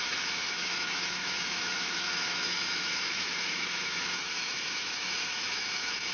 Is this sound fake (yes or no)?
yes